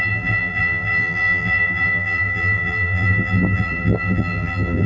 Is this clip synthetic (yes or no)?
yes